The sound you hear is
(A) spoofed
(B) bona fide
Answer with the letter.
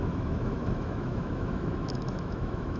A